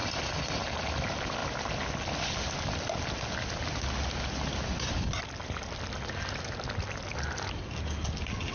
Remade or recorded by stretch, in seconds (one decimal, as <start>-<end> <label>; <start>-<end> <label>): 0.0-8.5 recorded